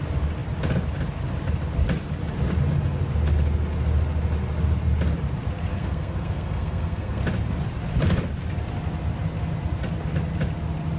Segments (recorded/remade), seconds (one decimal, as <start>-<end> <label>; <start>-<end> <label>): 0.0-5.7 recorded; 5.7-7.2 remade; 7.2-11.0 recorded